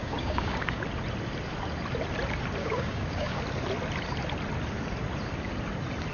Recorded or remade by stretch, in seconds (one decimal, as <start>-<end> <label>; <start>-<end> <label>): 0.0-0.8 remade; 0.8-2.6 recorded; 2.6-3.4 remade; 3.4-6.1 recorded